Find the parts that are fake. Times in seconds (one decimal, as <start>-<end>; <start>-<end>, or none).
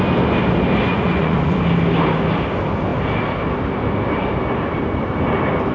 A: 0.9-1.6